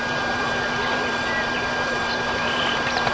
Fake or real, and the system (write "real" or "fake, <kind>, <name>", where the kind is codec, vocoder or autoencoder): fake, vocoder, BigVGAN v2